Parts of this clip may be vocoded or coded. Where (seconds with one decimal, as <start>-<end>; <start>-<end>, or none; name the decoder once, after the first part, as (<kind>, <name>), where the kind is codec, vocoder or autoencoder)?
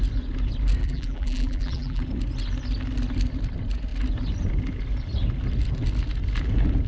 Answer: 0.8-2.0 (vocoder, BigVGAN v2)